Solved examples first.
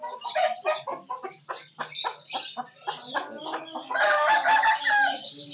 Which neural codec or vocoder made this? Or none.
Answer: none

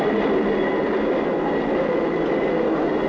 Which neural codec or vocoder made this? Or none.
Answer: none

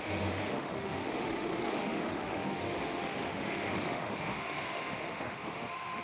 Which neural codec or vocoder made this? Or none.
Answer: autoencoder, DAC-VAE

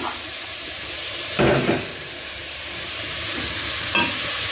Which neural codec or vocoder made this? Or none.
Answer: vocoder, BigVGAN v2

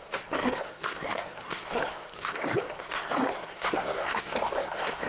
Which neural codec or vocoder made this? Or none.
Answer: codec, SNAC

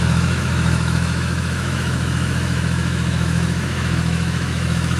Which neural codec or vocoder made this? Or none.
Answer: autoencoder, DAC-VAE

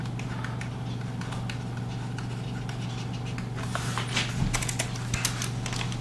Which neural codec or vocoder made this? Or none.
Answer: none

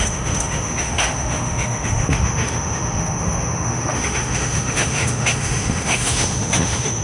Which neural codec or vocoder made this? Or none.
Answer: autoencoder, DAC-VAE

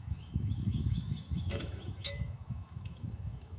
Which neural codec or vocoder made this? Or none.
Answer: autoencoder, DAC-VAE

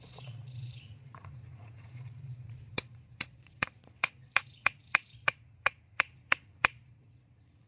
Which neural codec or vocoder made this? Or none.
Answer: vocoder, Vocos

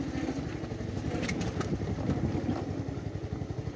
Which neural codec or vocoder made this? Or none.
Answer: none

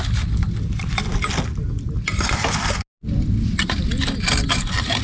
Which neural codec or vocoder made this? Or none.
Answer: none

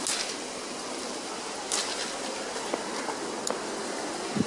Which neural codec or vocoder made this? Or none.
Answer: none